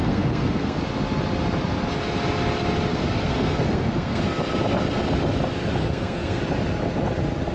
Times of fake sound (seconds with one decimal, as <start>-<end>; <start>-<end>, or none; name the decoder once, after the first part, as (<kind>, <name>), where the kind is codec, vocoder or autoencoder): 0.0-0.8 (codec, SNAC); 2.9-4.2; 5.8-6.4